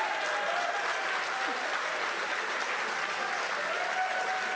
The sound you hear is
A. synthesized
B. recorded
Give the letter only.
B